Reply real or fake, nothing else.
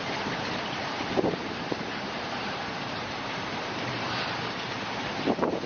fake